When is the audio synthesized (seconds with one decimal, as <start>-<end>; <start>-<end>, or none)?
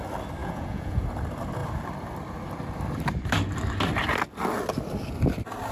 0.4-1.0